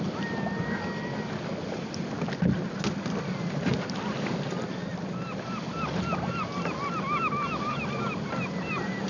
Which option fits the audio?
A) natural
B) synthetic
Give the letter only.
A